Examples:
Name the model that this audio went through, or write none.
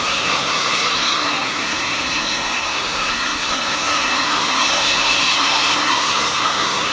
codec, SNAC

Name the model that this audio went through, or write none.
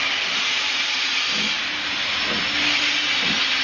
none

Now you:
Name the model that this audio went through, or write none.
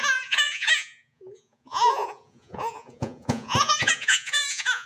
vocoder, Vocos